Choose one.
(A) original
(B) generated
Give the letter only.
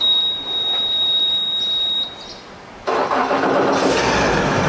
B